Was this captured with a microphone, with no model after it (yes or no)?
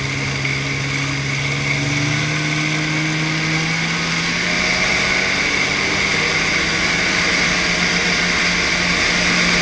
yes